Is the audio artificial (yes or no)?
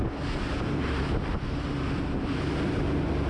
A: no